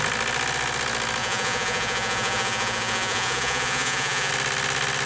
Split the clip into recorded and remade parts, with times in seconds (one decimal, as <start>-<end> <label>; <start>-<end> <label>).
0.0-1.2 recorded; 1.2-4.3 remade; 4.3-5.1 recorded